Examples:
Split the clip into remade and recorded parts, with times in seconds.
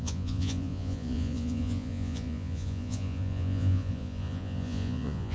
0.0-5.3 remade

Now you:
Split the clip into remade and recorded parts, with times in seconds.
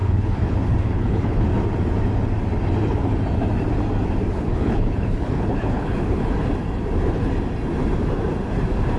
0.0-1.4 remade; 1.4-4.3 recorded; 4.3-6.3 remade; 6.3-9.0 recorded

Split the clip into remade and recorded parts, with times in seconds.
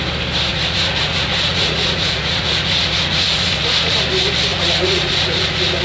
0.0-0.5 recorded; 0.5-4.0 remade; 4.0-4.5 recorded; 4.5-5.8 remade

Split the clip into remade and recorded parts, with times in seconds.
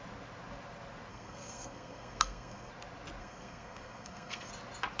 0.0-1.1 recorded; 1.1-2.7 remade; 2.7-3.2 recorded; 3.2-4.5 remade; 4.5-5.0 recorded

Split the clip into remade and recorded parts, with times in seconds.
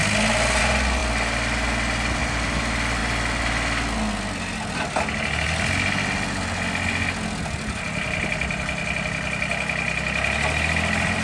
0.0-11.2 recorded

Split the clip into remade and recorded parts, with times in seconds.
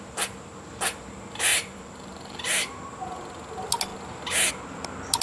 0.0-1.5 recorded; 1.5-2.9 remade; 2.9-5.2 recorded